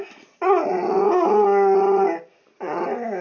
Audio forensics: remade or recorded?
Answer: recorded